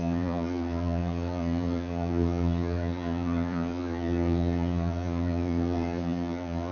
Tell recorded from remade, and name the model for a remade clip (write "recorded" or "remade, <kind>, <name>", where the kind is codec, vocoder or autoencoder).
remade, vocoder, Vocos